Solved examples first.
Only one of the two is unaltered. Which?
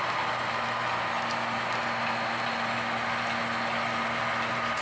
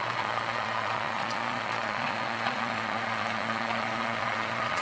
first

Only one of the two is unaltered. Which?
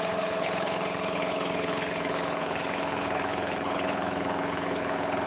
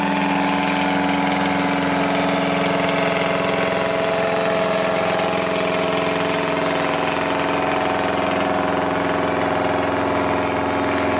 second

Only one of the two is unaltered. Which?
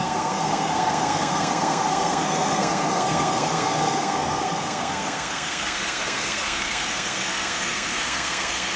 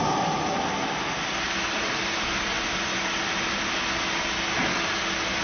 second